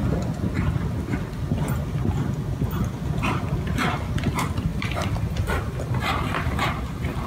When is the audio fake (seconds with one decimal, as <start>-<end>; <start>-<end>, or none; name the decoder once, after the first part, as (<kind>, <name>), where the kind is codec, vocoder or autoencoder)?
none